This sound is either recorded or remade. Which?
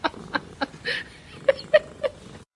remade